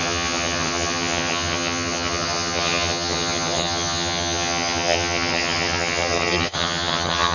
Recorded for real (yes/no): no